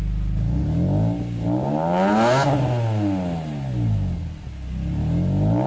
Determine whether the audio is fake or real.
real